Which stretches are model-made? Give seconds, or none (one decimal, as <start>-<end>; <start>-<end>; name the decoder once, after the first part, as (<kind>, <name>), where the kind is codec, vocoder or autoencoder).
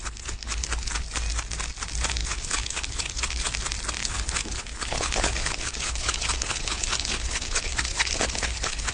0.0-0.7 (codec, HILCodec); 2.2-3.5; 4.0-8.9